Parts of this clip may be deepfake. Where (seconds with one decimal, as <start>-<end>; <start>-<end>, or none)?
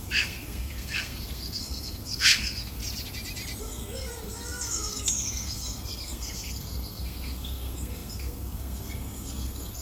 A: 0.0-2.8; 3.6-9.8